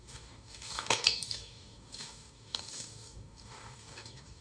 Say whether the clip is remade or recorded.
remade